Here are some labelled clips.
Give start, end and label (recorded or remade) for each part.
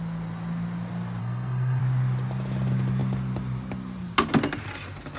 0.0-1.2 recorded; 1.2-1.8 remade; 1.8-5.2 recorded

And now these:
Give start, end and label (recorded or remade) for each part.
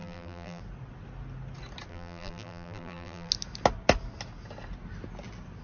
0.0-0.6 remade; 0.6-1.9 recorded; 1.9-3.3 remade; 3.3-5.6 recorded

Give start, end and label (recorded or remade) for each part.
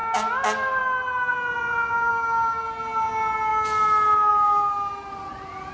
0.0-1.3 recorded; 1.3-2.1 remade; 2.1-5.7 recorded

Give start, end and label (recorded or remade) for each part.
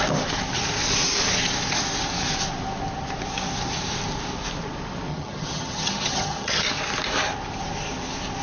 0.0-5.1 recorded; 5.1-6.7 remade; 6.7-8.4 recorded